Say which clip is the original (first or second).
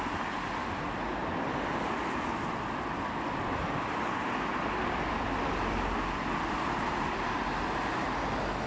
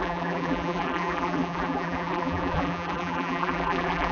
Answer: first